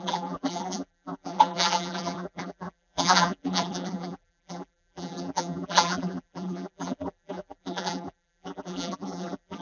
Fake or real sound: fake